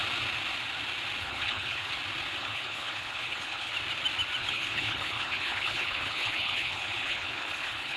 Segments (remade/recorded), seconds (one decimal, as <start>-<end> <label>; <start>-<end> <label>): 0.0-1.2 recorded; 1.2-1.9 remade; 1.9-2.4 recorded; 2.4-3.7 remade; 3.7-4.4 recorded; 4.4-8.0 remade